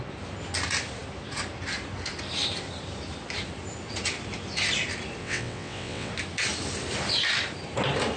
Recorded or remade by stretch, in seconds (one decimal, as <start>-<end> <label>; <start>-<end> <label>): 0.0-5.2 recorded; 5.2-6.1 remade; 6.1-8.2 recorded